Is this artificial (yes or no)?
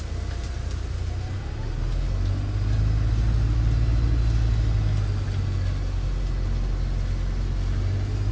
no